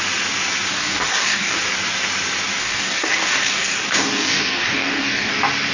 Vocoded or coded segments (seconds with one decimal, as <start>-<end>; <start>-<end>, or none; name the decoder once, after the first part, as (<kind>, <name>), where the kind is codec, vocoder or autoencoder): 0.7-1.6 (codec, DAC); 2.6-5.3